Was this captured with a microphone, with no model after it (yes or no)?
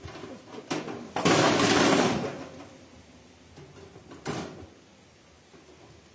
yes